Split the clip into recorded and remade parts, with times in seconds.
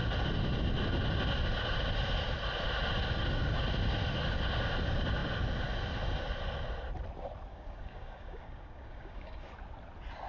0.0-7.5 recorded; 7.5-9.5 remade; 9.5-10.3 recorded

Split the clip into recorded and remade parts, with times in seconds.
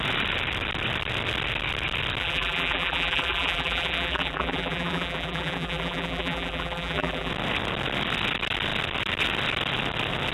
0.0-2.2 recorded; 2.2-7.3 remade; 7.3-10.3 recorded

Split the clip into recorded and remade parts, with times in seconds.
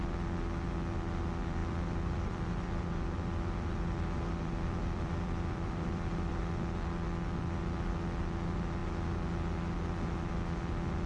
0.0-1.6 recorded; 1.6-6.4 remade; 6.4-11.1 recorded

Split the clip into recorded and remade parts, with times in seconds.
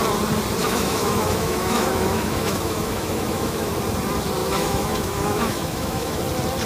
0.0-0.6 recorded; 0.6-3.7 remade; 3.7-4.4 recorded; 4.4-6.2 remade; 6.2-6.7 recorded